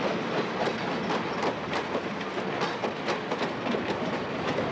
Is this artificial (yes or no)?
no